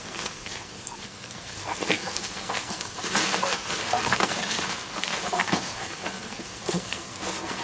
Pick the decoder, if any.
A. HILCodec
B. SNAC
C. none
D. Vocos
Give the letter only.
B